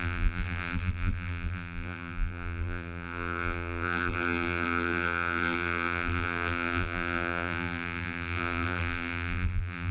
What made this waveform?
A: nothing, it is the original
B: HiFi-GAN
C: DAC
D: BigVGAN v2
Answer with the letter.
D